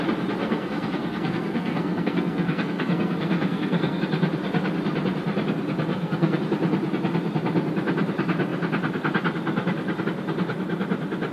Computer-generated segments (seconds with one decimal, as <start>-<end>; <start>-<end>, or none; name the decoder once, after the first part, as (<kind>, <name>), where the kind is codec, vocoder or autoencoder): 0.4-4.0 (codec, SNAC); 5.9-6.4